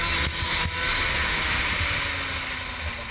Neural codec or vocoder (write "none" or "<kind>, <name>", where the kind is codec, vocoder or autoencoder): none